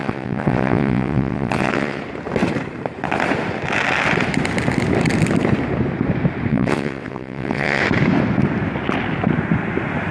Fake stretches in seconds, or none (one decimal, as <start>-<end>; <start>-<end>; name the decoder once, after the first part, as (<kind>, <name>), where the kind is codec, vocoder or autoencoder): 0.0-2.0 (vocoder, WaveNeXt); 6.5-7.8